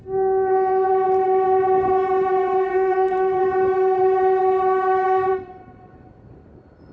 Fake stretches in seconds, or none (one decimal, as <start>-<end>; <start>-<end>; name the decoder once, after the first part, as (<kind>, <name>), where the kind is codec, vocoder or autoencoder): 0.0-0.9 (codec, SNAC); 2.7-3.4